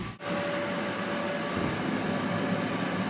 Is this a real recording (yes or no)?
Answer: yes